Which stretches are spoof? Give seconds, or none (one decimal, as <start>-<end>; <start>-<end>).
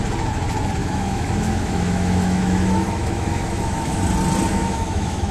0.8-4.0; 4.5-5.3